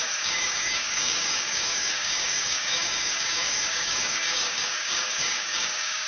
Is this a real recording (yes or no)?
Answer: no